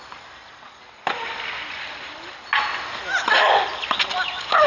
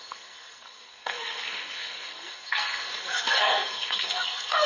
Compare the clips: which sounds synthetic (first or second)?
second